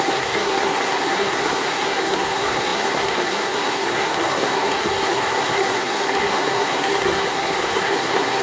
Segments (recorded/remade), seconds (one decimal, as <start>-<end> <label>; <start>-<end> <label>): 0.0-8.4 remade